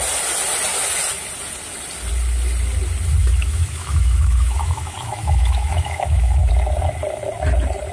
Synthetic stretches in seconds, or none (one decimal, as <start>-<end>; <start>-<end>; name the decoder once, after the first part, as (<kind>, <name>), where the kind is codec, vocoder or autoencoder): 3.2-6.5 (autoencoder, DAC-VAE)